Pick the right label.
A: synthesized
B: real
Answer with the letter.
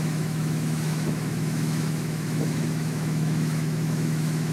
A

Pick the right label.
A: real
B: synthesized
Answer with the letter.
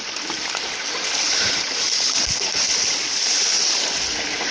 A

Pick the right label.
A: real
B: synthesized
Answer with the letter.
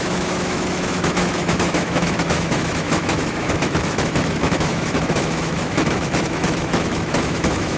B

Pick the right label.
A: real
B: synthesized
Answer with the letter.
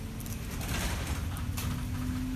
A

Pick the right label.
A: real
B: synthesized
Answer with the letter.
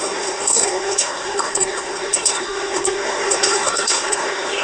B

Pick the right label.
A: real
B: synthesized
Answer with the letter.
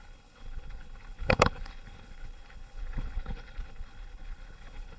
B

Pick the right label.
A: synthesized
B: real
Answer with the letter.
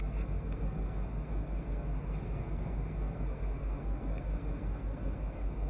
A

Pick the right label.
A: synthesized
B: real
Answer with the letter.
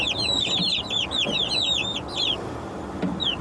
B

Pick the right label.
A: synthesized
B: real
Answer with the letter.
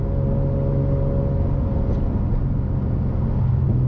B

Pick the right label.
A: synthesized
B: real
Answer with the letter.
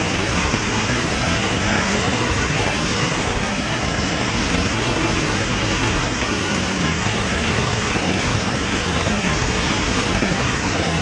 A